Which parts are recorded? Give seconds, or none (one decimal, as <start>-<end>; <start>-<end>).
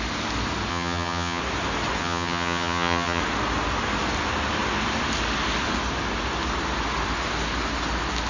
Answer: 0.0-0.7; 1.4-2.0; 3.2-8.3